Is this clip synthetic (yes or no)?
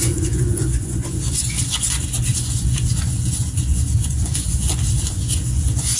yes